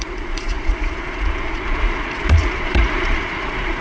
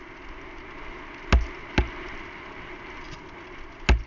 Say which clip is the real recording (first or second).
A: second